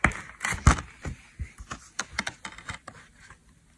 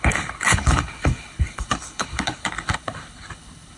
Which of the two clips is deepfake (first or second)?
second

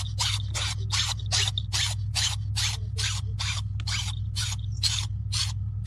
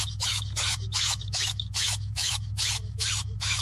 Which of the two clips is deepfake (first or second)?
second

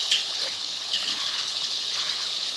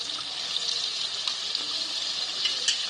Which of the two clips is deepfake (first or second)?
first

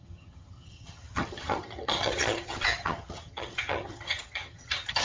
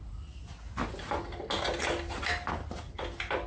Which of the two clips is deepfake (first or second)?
first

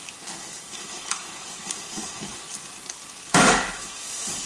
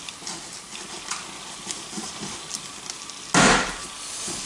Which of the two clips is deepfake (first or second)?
first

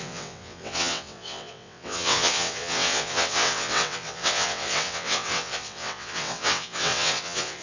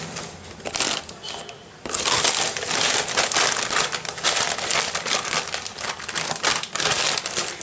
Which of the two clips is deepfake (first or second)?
first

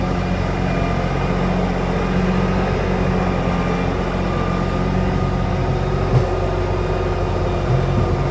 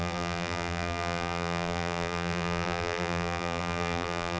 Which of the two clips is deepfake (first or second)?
second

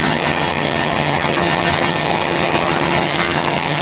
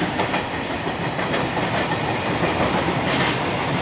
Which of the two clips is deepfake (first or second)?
first